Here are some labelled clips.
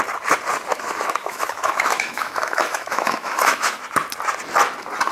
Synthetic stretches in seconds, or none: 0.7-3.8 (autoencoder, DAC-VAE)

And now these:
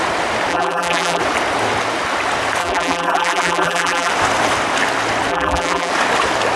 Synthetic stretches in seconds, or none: 0.5-1.2 (vocoder, BigVGAN v2); 2.6-4.1; 5.3-5.9